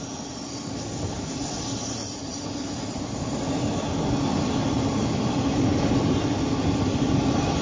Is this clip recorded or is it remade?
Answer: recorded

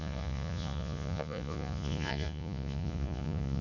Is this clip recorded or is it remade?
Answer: remade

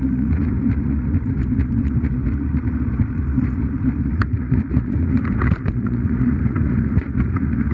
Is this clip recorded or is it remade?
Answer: remade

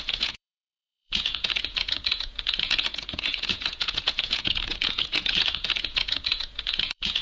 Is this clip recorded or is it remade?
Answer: remade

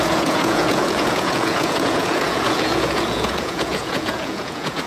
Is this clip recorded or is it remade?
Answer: remade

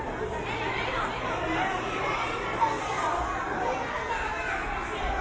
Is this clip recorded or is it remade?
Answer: recorded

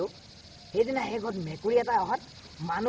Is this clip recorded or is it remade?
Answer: recorded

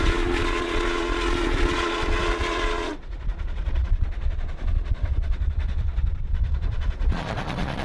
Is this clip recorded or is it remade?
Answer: remade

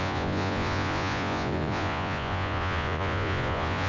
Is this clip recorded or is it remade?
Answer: remade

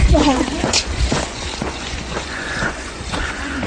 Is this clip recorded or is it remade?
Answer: remade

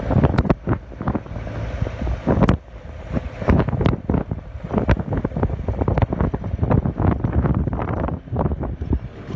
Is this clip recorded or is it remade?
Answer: recorded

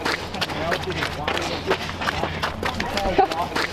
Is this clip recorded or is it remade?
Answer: recorded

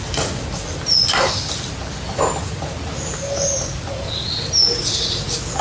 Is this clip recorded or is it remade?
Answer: recorded